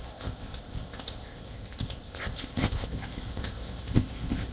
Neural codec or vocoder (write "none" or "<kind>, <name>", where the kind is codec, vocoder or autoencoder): codec, ZipCodec